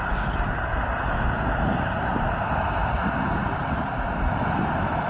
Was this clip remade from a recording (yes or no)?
no